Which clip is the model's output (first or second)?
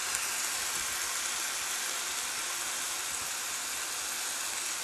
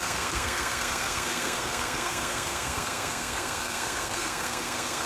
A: second